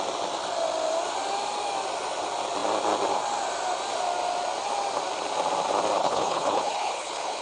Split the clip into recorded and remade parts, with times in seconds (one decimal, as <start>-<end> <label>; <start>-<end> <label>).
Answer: 0.0-6.0 recorded; 6.0-7.4 remade